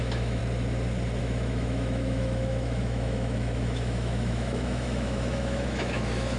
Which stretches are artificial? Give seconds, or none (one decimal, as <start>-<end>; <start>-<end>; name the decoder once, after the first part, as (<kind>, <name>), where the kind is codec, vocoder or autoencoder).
0.0-0.4 (autoencoder, DAC-VAE); 1.2-6.4